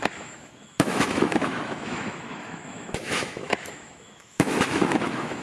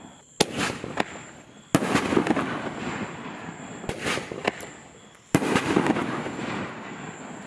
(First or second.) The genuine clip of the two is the second